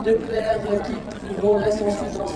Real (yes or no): no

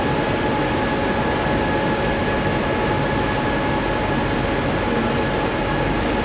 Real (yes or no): yes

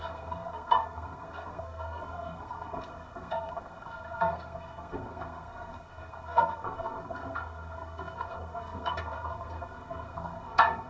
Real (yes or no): no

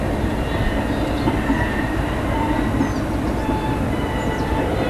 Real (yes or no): yes